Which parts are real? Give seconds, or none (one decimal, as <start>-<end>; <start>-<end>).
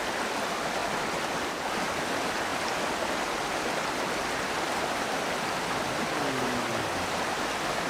0.0-7.9